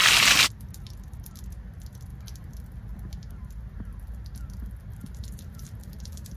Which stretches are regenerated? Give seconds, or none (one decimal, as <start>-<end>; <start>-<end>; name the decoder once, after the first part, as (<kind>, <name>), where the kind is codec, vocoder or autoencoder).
4.9-6.4 (vocoder, BigVGAN v2)